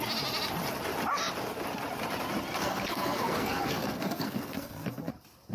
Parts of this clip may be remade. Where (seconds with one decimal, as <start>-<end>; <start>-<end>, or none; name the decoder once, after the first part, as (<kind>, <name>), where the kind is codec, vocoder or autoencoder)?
2.6-5.1 (codec, SNAC)